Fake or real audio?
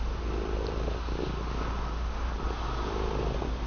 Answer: real